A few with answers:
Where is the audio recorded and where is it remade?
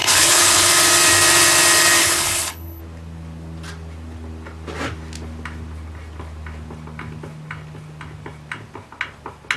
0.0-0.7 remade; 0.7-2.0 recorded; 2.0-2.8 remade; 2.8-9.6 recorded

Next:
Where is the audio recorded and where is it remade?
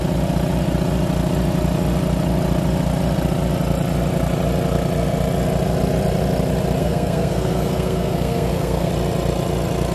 0.0-6.8 recorded; 6.8-8.9 remade; 8.9-9.9 recorded